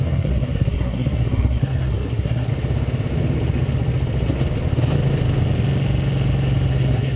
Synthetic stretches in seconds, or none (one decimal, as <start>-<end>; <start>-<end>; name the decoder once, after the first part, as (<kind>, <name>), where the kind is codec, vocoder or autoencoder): 0.0-2.5 (codec, SNAC); 6.7-7.2